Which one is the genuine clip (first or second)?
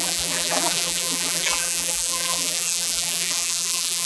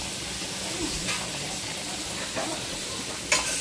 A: second